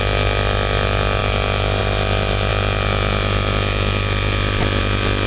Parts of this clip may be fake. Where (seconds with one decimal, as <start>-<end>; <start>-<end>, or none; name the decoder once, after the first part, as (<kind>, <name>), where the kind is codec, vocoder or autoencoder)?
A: none